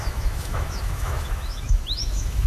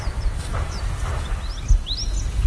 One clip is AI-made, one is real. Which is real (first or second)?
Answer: second